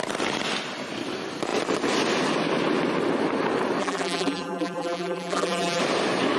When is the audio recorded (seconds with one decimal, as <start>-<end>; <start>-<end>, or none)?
0.0-3.8; 5.8-6.4